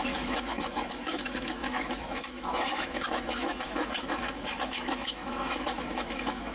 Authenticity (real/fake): fake